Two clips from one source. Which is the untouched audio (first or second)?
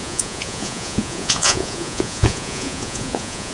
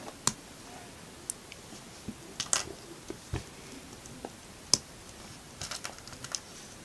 second